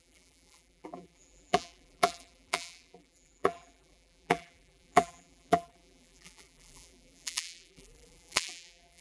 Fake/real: fake